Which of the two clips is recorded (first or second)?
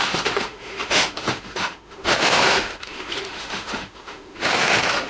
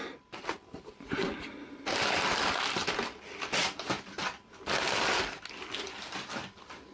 second